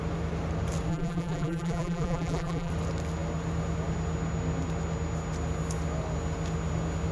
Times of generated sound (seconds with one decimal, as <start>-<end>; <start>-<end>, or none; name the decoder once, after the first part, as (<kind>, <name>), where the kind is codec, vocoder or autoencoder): 0.9-2.7 (vocoder, BigVGAN v2)